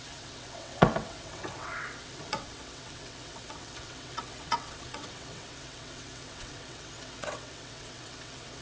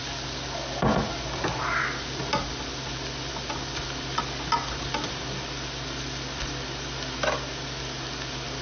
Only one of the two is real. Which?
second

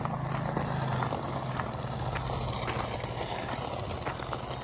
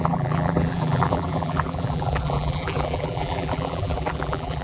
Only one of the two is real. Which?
first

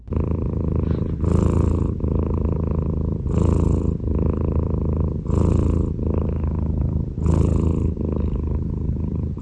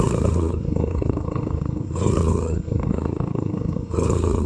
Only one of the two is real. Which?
first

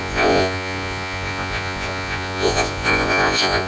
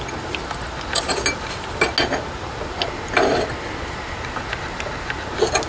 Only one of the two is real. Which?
second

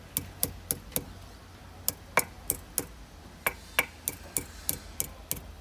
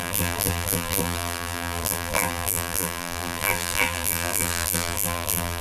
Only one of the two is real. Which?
first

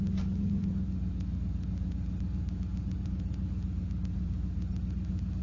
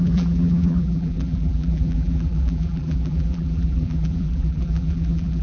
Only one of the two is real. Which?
first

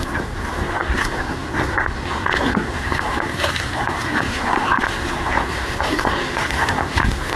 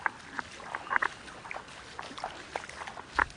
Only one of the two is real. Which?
second